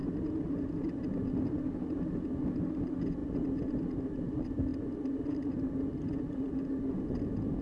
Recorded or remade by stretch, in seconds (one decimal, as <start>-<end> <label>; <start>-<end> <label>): 0.0-7.6 recorded